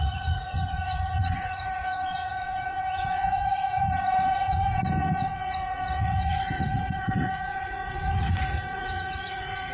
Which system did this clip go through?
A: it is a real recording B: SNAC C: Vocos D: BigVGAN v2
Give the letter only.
C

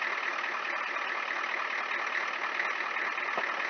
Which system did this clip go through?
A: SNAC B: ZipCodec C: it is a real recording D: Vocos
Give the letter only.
C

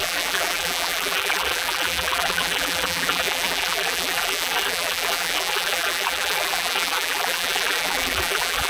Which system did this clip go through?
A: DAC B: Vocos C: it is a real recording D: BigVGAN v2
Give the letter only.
D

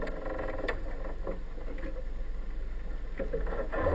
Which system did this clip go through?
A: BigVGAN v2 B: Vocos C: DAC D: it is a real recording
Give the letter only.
D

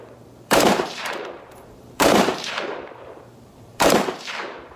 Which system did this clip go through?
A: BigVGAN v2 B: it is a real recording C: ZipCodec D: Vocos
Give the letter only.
A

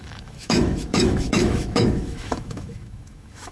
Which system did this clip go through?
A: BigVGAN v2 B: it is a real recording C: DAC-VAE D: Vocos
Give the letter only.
C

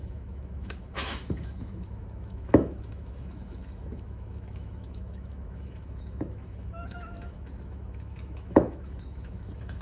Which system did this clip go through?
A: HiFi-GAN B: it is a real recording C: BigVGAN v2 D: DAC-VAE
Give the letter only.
D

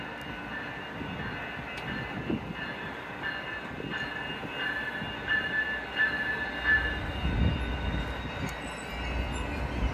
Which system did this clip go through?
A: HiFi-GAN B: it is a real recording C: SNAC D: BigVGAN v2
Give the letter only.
B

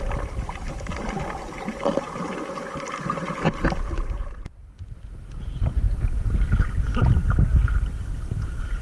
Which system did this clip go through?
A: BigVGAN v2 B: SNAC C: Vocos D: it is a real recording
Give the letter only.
A